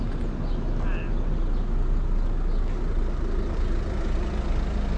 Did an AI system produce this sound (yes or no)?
no